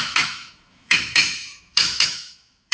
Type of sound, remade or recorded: remade